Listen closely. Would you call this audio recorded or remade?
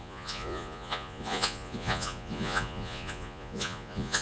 remade